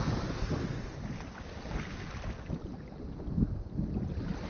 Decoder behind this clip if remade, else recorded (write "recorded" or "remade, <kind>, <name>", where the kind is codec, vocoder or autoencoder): recorded